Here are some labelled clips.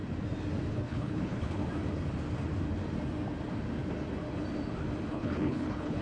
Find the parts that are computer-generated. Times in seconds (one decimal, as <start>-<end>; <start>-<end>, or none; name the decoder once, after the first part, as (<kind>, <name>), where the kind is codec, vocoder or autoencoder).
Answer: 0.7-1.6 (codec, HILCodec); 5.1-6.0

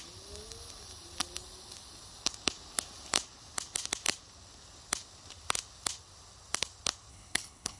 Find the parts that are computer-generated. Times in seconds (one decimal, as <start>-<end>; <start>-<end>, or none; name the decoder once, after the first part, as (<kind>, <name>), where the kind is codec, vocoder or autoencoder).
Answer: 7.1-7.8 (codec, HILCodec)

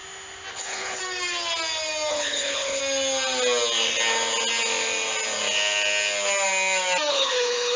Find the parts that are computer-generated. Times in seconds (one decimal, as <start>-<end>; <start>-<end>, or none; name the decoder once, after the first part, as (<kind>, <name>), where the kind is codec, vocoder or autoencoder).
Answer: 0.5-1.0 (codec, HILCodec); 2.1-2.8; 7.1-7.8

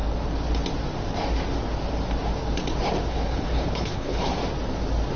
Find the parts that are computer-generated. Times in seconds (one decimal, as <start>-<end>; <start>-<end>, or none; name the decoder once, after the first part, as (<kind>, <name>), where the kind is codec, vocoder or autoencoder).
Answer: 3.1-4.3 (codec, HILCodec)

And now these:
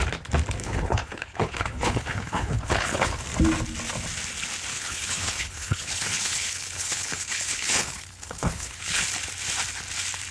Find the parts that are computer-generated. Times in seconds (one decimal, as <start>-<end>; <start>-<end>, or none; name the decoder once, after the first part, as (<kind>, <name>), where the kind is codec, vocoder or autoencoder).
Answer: 0.6-3.2 (codec, HILCodec); 4.7-9.0

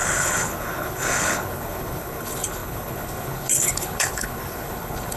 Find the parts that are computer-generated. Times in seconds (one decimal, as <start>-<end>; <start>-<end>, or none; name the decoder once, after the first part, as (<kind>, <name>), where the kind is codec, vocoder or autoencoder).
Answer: 0.0-5.2 (codec, HILCodec)